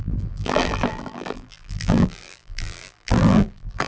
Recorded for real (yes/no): no